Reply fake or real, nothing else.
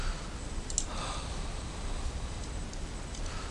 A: real